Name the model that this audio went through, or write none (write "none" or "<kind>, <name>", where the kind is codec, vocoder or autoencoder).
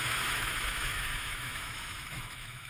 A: autoencoder, DAC-VAE